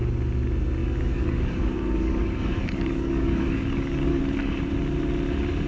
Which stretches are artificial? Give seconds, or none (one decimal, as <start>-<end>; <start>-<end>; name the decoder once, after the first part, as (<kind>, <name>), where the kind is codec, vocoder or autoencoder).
0.8-4.2 (codec, DAC)